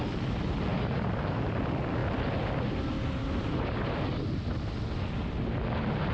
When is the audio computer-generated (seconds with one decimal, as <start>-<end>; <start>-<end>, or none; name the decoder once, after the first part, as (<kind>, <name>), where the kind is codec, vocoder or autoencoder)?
0.7-1.5 (vocoder, BigVGAN v2)